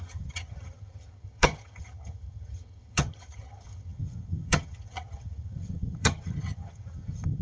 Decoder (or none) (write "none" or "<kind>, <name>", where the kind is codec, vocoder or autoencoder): vocoder, HiFi-GAN